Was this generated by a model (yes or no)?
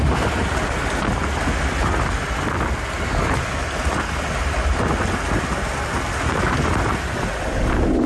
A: no